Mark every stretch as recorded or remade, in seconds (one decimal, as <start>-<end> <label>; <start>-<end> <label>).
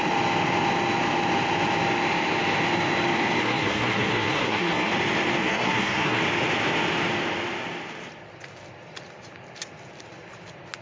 0.0-3.4 recorded; 3.4-4.9 remade; 4.9-5.4 recorded; 5.4-6.2 remade; 6.2-10.8 recorded